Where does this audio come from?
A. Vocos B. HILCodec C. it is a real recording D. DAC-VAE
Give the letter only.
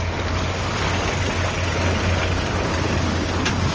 C